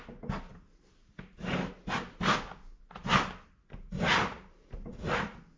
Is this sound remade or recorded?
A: recorded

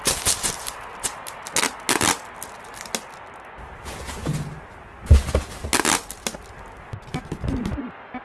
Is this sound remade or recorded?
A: recorded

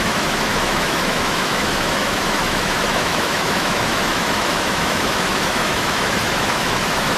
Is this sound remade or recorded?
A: remade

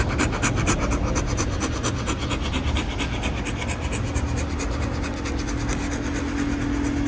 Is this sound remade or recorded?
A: recorded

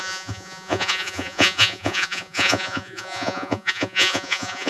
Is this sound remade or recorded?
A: remade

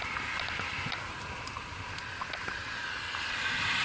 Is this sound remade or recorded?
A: recorded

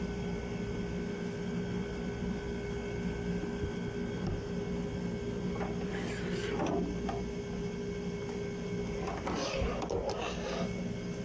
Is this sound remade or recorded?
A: recorded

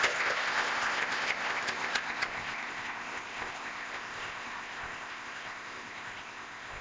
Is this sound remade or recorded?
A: remade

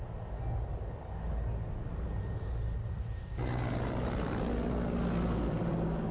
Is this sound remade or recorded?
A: recorded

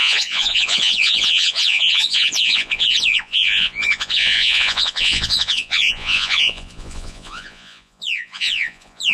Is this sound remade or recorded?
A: remade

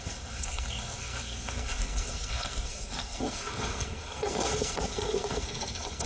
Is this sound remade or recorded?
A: remade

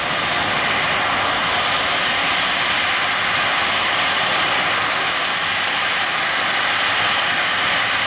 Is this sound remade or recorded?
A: remade